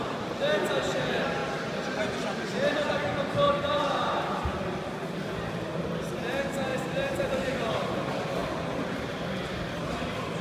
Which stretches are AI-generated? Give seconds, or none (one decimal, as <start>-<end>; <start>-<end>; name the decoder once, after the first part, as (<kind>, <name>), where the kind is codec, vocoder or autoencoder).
none